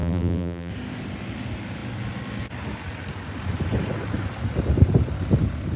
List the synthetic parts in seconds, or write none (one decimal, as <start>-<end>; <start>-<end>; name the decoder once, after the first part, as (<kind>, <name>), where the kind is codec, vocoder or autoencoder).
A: 0.0-0.7 (vocoder, BigVGAN v2)